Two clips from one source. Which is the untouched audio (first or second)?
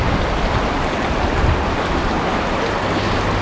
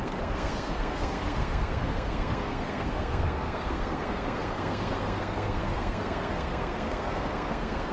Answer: first